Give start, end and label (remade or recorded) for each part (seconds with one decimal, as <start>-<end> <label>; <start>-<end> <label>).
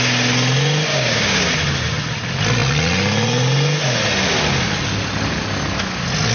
0.0-0.9 recorded; 0.9-1.5 remade; 1.5-6.3 recorded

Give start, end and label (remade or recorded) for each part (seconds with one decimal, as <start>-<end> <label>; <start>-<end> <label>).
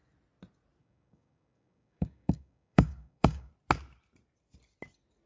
0.0-0.8 recorded; 0.8-3.5 remade; 3.5-5.3 recorded